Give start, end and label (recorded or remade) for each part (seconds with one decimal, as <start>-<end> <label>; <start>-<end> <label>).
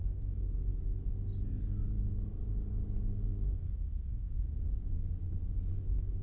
0.0-0.6 remade; 0.6-3.1 recorded; 3.1-4.3 remade; 4.3-6.2 recorded